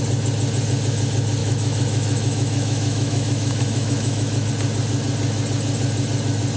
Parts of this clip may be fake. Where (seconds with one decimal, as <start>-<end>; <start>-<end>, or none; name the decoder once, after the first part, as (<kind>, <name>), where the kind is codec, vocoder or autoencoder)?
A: 1.4-4.5 (autoencoder, DAC-VAE)